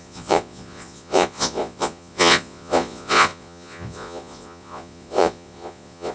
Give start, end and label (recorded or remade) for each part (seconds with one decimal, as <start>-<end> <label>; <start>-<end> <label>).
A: 0.0-6.1 remade